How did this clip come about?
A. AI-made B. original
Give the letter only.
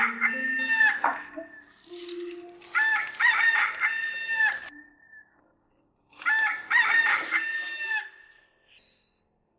B